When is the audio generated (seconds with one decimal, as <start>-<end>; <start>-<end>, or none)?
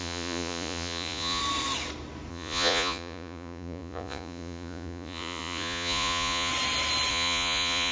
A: 0.0-1.4; 2.3-6.5; 7.1-7.9